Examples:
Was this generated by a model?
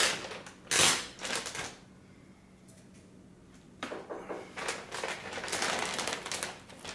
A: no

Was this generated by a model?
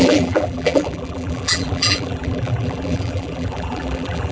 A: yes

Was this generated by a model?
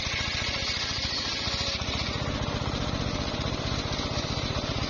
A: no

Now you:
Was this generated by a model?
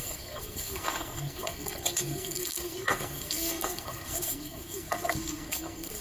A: yes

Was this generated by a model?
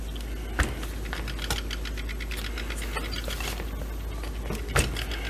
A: no